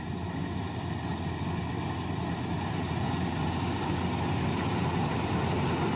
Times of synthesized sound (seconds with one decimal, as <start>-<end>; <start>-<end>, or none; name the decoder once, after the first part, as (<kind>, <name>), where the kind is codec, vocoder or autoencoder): none